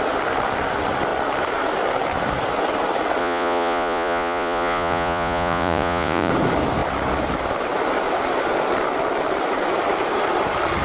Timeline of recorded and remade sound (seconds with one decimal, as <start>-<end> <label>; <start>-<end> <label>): 0.0-3.2 recorded; 3.2-6.3 remade; 6.3-10.8 recorded